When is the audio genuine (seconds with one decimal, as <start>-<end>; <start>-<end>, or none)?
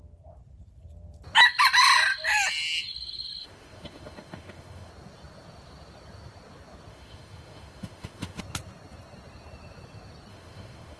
0.0-3.4; 4.9-6.9; 8.4-10.3